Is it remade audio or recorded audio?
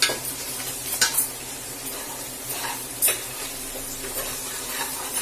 remade